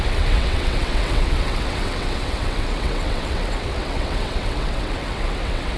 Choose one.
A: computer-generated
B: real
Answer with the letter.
A